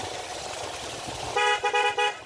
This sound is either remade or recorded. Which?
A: recorded